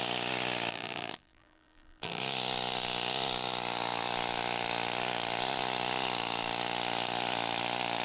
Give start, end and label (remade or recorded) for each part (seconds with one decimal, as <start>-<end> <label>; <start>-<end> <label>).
0.0-0.7 recorded; 0.7-2.2 remade; 2.2-8.0 recorded